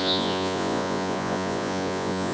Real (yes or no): no